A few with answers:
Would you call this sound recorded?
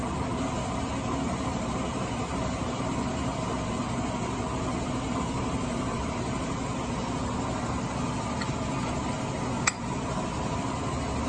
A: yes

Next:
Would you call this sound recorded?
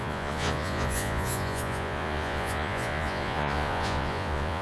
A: no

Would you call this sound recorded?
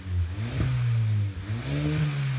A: yes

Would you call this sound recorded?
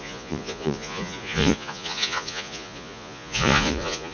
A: no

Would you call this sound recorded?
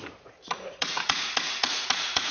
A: no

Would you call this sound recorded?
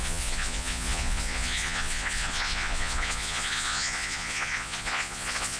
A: no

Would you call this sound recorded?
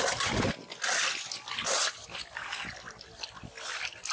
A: yes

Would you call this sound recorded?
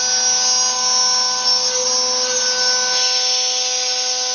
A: yes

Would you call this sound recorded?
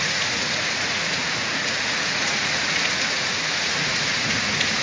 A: no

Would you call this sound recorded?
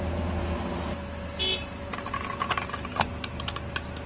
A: yes